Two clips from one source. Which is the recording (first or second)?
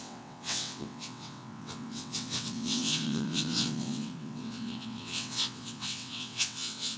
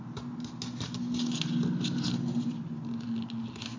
second